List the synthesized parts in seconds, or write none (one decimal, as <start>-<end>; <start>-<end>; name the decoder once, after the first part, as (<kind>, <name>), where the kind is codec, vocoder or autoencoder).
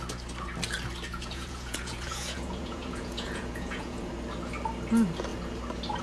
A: 1.1-4.1 (vocoder, Vocos)